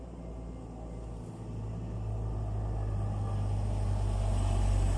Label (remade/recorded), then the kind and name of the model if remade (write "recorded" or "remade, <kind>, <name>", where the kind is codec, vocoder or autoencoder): recorded